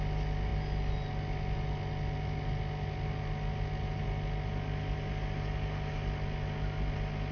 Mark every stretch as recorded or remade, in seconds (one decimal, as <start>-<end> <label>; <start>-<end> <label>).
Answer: 0.0-7.3 recorded